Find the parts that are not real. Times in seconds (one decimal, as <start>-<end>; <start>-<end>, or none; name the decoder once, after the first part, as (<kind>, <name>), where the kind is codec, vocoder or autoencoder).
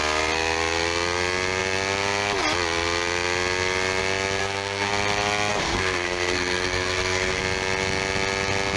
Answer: 4.4-4.9 (codec, SNAC); 5.5-7.4